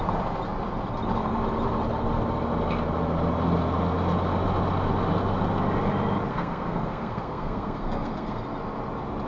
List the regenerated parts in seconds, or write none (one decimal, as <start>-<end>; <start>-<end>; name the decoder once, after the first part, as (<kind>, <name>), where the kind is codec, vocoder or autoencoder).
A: 6.3-8.4 (codec, SNAC)